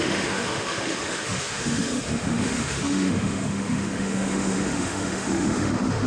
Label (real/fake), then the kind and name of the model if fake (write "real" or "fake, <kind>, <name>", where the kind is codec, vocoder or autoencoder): fake, autoencoder, DAC-VAE